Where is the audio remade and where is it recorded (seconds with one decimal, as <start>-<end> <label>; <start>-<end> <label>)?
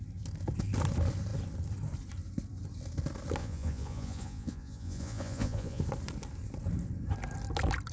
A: 0.0-3.4 recorded; 3.4-5.8 remade; 5.8-7.9 recorded